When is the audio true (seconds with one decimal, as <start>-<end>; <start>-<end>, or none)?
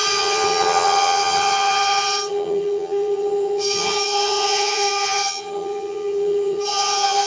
none